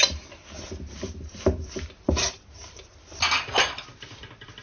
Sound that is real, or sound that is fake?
real